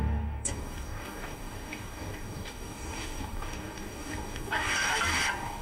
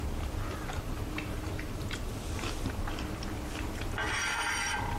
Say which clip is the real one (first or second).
second